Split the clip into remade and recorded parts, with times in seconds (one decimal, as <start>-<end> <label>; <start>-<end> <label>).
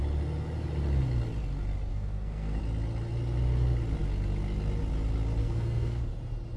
0.0-1.9 recorded; 1.9-2.6 remade; 2.6-5.4 recorded; 5.4-6.0 remade; 6.0-6.6 recorded